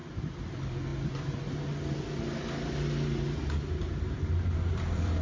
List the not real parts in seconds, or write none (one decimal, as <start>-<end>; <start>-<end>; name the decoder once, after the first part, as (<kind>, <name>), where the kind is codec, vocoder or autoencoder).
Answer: 0.5-0.9 (vocoder, BigVGAN v2); 4.0-5.2